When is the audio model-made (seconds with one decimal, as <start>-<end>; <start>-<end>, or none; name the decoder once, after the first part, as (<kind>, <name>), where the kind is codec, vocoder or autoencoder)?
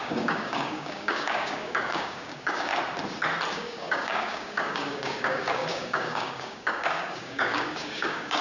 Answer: 0.0-2.7 (codec, DAC); 3.5-8.4